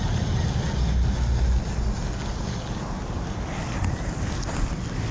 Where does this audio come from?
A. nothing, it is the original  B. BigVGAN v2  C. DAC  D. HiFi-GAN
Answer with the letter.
A